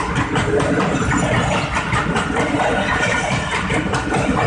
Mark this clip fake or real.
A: real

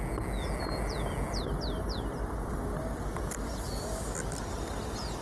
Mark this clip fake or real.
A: real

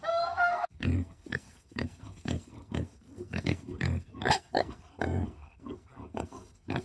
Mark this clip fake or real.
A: fake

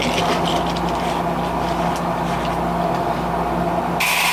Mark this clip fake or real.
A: real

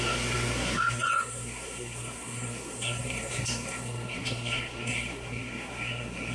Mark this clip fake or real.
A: fake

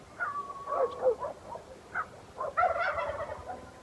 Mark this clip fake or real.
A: real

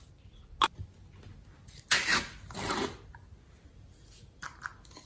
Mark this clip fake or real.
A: real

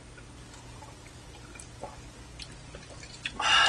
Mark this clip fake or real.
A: real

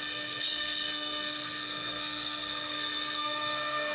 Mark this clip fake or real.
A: fake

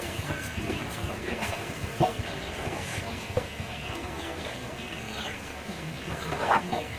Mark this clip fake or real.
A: fake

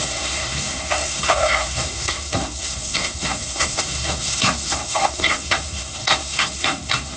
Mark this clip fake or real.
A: fake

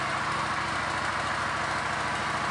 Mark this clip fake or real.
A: real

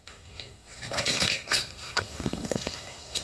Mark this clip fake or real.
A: fake